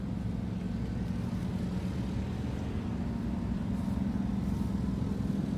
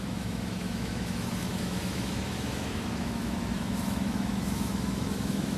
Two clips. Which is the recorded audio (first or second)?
first